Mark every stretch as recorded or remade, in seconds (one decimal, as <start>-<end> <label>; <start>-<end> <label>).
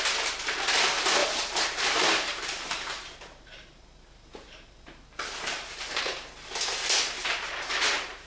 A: 0.0-1.2 recorded; 1.2-6.0 remade; 6.0-7.2 recorded; 7.2-8.3 remade